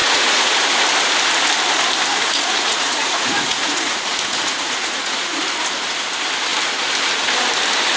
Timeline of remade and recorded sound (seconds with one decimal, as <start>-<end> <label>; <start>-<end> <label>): 0.0-0.6 remade; 0.6-2.1 recorded; 2.1-5.4 remade; 5.4-8.0 recorded